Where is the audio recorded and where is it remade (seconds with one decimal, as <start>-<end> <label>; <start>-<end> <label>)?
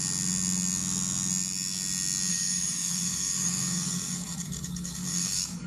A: 0.0-2.3 recorded; 2.3-5.7 remade